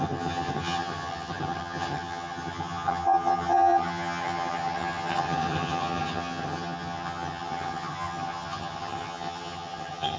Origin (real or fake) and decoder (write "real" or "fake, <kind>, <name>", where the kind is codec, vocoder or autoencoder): fake, vocoder, HiFi-GAN